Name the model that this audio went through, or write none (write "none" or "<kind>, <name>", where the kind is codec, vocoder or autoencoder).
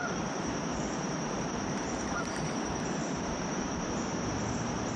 vocoder, BigVGAN v2